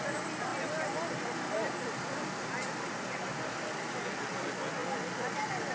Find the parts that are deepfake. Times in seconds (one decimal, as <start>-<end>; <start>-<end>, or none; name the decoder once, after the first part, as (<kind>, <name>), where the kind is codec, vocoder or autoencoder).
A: none